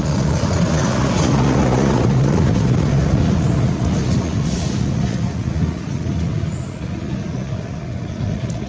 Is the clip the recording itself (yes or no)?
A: no